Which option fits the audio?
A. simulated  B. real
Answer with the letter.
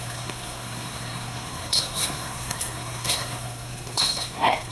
A